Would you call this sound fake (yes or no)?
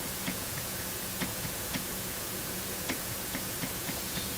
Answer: yes